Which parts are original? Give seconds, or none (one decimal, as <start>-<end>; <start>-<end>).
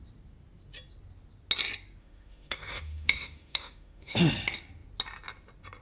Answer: 0.0-2.0; 4.3-5.8